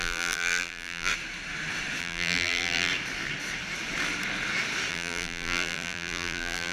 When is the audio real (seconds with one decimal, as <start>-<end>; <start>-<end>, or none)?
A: 1.1-2.0; 2.9-4.9